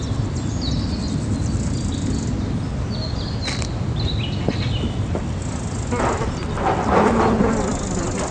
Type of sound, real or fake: real